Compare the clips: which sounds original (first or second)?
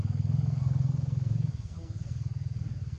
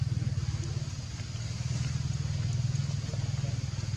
second